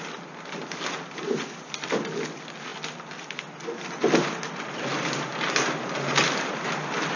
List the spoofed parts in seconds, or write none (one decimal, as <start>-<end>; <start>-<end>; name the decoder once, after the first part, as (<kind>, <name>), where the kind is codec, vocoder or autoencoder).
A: none